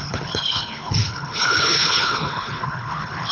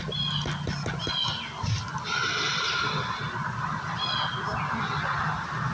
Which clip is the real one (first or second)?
second